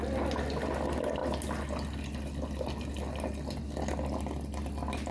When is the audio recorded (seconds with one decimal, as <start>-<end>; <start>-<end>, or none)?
0.0-5.1